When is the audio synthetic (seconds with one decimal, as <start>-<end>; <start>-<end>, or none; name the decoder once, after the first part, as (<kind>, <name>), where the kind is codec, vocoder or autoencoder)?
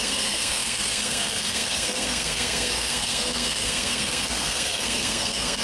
0.0-5.6 (codec, SNAC)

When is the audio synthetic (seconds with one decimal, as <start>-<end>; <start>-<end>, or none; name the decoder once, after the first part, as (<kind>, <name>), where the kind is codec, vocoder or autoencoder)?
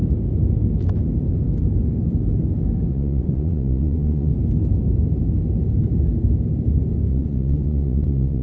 2.9-4.3 (vocoder, Vocos); 7.1-8.4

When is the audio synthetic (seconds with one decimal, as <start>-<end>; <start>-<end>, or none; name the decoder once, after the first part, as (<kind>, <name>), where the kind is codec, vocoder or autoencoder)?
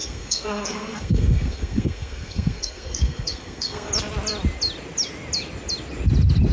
0.0-3.9 (codec, SNAC)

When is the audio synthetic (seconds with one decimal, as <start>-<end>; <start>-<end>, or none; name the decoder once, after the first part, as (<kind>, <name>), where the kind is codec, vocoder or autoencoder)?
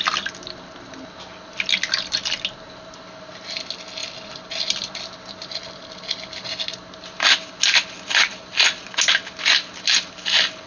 none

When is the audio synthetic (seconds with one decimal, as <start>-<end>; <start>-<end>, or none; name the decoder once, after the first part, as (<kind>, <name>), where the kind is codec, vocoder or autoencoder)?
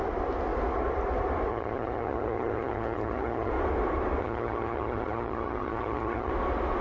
1.5-3.5 (vocoder, HiFi-GAN); 4.2-6.3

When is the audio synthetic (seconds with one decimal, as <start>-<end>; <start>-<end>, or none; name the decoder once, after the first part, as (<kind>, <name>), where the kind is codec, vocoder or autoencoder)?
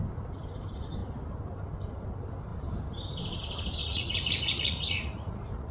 3.8-5.7 (vocoder, Vocos)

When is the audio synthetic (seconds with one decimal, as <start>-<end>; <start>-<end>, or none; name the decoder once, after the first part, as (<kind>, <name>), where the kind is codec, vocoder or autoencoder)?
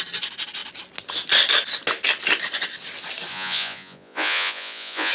3.3-5.1 (vocoder, Vocos)